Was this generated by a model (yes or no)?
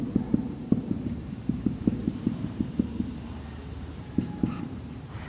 yes